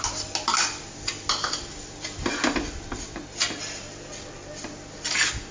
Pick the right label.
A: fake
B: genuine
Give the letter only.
B